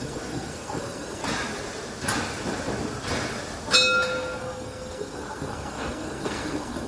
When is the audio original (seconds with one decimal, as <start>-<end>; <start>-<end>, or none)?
1.2-4.4